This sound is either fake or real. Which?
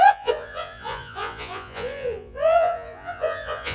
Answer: fake